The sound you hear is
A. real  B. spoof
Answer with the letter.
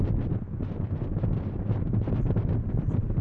A